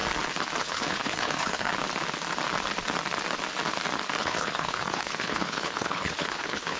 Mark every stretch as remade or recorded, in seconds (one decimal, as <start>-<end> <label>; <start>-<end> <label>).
0.0-0.6 recorded; 0.6-1.7 remade; 1.7-4.2 recorded; 4.2-6.8 remade